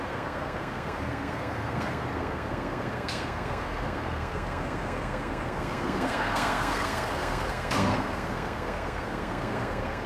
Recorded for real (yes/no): no